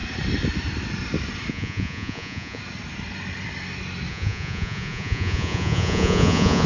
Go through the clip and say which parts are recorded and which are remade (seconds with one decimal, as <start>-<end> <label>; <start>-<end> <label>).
0.0-1.5 recorded; 1.5-2.6 remade; 2.6-4.1 recorded; 4.1-6.7 remade